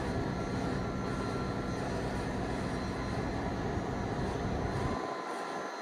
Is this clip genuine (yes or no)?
yes